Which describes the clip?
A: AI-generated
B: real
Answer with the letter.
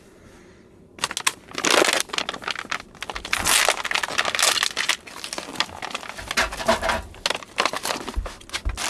B